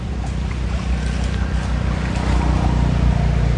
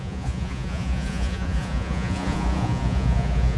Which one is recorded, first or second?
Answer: first